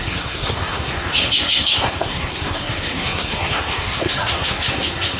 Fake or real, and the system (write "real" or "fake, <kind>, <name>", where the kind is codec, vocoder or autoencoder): fake, codec, SNAC